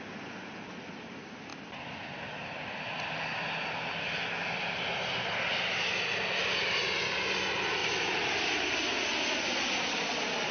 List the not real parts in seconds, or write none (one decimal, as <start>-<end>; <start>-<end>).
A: none